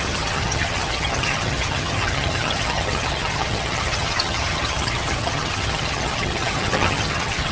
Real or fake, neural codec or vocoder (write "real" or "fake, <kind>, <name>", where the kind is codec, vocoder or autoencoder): fake, vocoder, HiFi-GAN